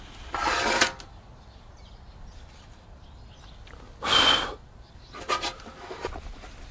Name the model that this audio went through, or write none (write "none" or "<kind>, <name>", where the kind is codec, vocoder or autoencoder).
none